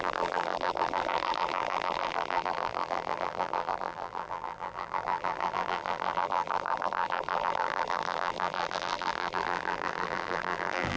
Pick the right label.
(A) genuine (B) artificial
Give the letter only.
B